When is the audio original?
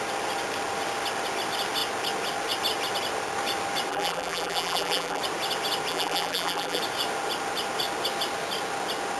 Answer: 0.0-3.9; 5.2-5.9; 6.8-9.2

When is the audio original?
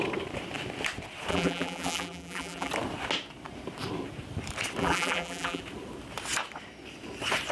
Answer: 0.0-1.3; 2.7-4.8; 5.6-7.5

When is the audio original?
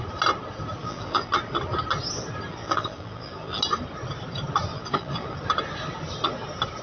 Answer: 0.0-0.8; 1.3-2.5; 3.6-4.7; 5.4-6.8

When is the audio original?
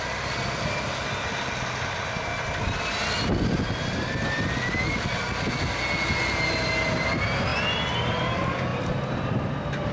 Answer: 0.0-8.7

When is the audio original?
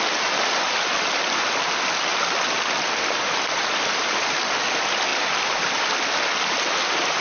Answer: 0.0-2.1; 3.1-7.2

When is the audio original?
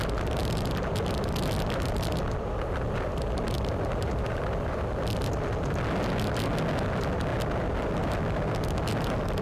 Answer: 0.0-0.4; 4.8-7.3; 8.0-9.4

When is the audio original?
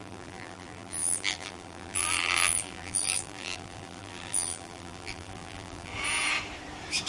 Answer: 5.9-7.1